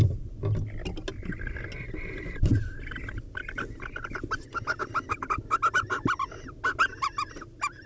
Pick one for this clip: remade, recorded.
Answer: recorded